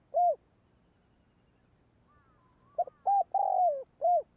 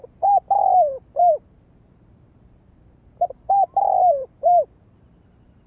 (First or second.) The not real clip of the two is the second